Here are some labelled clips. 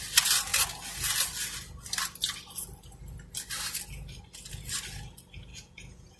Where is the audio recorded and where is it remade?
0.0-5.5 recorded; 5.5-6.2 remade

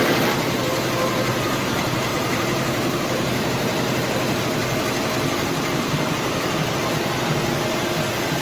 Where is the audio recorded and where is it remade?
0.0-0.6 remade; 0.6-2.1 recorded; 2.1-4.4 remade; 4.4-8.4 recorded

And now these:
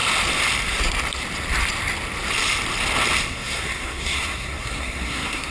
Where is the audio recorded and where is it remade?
0.0-3.3 recorded; 3.3-5.5 remade